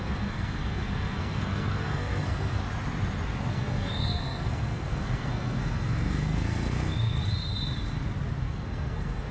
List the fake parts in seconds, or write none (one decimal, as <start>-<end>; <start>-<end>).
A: 0.0-2.6; 3.5-7.2; 8.4-9.3